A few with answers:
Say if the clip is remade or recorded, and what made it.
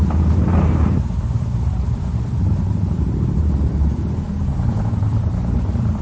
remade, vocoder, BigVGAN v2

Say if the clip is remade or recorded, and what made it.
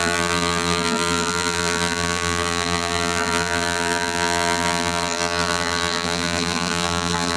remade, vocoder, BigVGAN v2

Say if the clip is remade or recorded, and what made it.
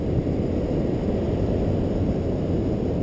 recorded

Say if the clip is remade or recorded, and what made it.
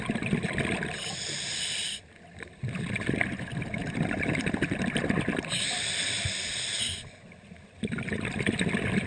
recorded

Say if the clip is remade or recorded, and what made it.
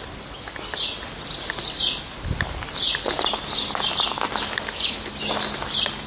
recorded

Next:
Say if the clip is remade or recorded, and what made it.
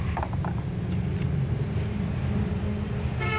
recorded